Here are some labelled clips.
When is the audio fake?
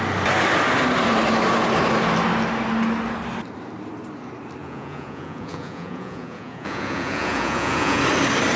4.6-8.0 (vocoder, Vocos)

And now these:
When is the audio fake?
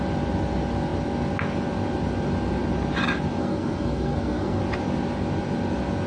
3.4-4.6 (codec, SNAC)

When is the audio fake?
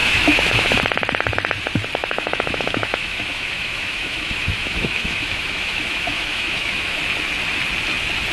0.0-0.8 (autoencoder, DAC-VAE); 2.0-7.0